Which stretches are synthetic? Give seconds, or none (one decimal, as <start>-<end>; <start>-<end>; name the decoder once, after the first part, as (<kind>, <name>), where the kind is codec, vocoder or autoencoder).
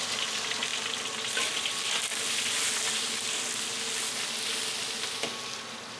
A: none